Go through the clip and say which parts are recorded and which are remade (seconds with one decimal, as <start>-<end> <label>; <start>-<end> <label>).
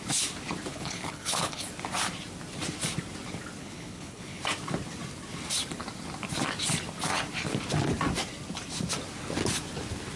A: 0.0-0.7 recorded; 0.7-1.6 remade; 1.6-3.6 recorded; 3.6-4.4 remade; 4.4-10.2 recorded